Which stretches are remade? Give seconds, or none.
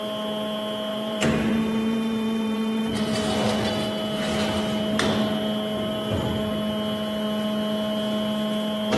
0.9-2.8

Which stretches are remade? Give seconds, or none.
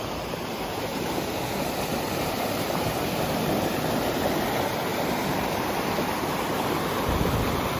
0.9-3.5; 4.9-5.7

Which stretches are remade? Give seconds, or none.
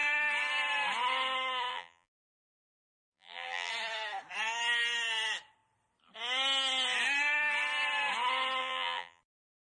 1.7-3.7; 8.6-9.2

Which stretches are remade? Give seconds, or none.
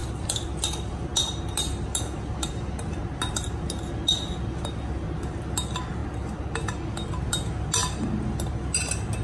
0.0-0.6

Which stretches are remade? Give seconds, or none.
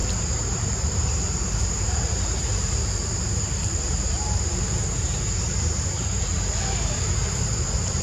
0.0-6.3; 7.4-8.0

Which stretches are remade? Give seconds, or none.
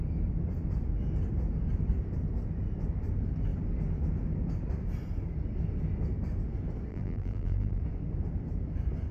6.9-7.8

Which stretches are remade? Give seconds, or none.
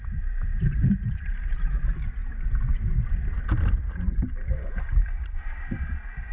0.0-2.2